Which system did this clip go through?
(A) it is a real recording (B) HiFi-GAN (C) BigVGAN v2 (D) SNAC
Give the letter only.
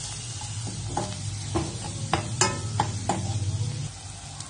A